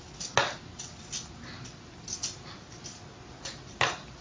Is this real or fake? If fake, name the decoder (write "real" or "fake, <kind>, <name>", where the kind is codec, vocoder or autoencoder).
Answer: real